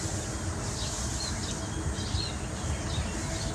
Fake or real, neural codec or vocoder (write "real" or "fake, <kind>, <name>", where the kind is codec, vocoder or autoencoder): real